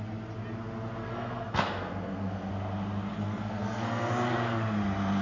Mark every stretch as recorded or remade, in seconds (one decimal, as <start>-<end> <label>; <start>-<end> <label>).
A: 0.0-1.0 recorded; 1.0-2.5 remade; 2.5-3.2 recorded; 3.2-4.1 remade; 4.1-5.2 recorded

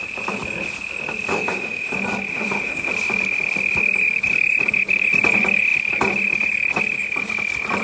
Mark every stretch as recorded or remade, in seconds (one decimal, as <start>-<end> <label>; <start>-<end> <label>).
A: 0.0-1.3 recorded; 1.3-1.9 remade; 1.9-2.3 recorded; 2.3-2.9 remade; 2.9-7.8 recorded

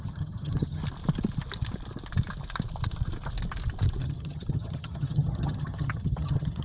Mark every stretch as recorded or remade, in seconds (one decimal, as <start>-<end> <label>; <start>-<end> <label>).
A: 0.0-0.8 remade; 0.8-4.0 recorded; 4.0-6.6 remade

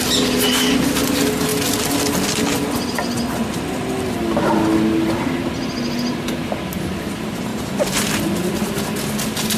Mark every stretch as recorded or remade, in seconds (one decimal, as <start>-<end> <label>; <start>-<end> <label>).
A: 0.0-7.5 recorded; 7.5-8.2 remade; 8.2-9.6 recorded

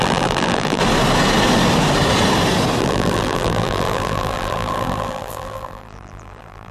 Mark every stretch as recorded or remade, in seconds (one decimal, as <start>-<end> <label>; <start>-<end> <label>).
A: 0.0-0.8 remade; 0.8-2.8 recorded; 2.8-6.7 remade

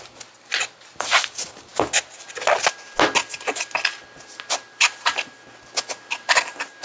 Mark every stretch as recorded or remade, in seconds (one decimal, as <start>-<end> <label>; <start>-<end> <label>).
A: 0.0-6.8 recorded